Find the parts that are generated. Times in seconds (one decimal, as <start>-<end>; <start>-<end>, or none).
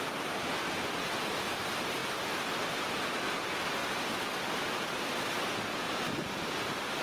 3.8-5.1